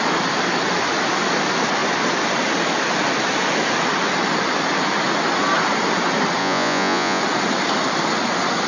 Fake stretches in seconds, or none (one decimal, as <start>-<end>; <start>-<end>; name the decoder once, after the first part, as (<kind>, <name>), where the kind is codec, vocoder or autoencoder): 6.4-7.2 (vocoder, Vocos)